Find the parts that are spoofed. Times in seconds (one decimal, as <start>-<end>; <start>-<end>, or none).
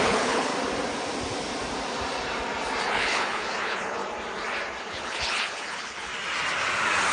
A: 0.0-0.5; 2.8-4.0; 4.8-6.1